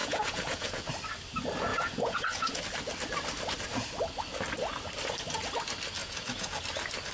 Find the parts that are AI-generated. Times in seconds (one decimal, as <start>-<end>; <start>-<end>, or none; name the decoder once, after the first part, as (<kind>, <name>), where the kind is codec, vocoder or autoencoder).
0.0-0.9 (vocoder, Vocos); 1.7-2.6; 6.0-6.6